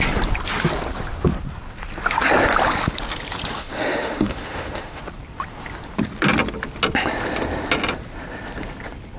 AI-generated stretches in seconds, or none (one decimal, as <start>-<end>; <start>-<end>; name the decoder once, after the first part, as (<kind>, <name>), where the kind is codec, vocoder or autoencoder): 3.6-5.0 (autoencoder, DAC-VAE)